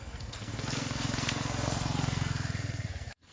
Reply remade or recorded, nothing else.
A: remade